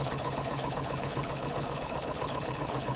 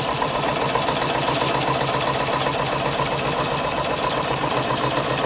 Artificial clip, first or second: first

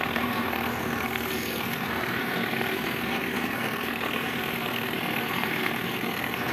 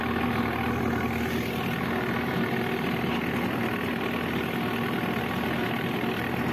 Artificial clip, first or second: first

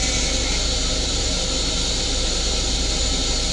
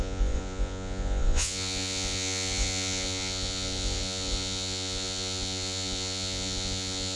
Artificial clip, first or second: second